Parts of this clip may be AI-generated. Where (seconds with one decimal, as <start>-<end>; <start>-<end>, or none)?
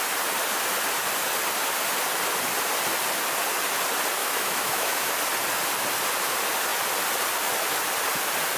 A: 4.2-5.1